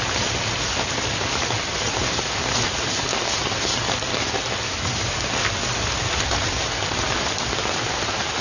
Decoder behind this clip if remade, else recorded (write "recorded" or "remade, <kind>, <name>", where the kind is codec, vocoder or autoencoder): recorded